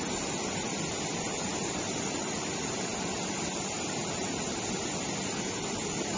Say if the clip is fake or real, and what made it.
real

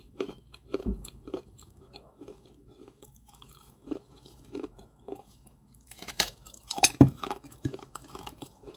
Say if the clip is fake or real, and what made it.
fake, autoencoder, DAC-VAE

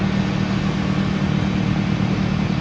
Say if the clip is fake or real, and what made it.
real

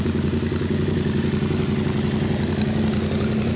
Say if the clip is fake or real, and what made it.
real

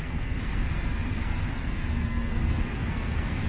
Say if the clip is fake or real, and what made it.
fake, codec, SNAC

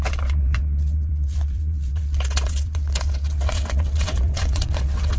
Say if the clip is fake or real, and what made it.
fake, vocoder, WaveNeXt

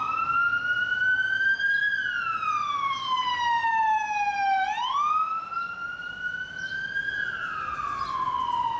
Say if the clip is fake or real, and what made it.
real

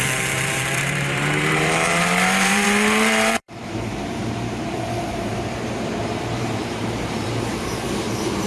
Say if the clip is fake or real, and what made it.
fake, vocoder, BigVGAN v2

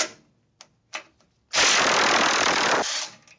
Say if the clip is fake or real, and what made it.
real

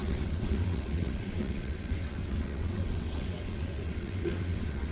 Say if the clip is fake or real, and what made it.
fake, vocoder, WaveNeXt